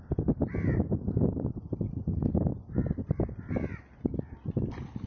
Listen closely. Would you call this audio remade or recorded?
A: recorded